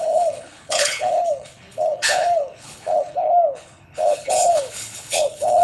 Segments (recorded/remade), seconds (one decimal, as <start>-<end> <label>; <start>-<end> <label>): 0.0-5.6 remade